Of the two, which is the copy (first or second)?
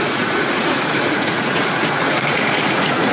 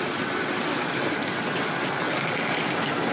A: first